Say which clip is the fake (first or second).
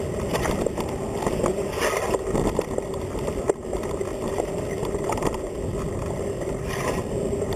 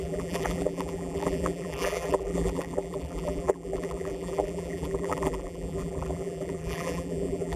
second